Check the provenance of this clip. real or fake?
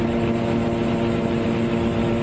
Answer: real